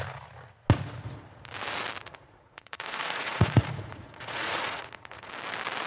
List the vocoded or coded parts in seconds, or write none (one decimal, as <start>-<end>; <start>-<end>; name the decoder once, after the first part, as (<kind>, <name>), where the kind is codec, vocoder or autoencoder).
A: 2.0-5.3 (vocoder, Vocos)